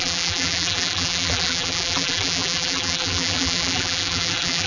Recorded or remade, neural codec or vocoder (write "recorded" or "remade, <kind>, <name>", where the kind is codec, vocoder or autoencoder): remade, vocoder, BigVGAN v2